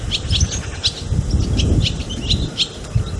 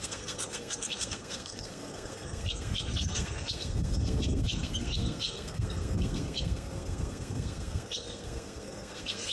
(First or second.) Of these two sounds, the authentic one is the first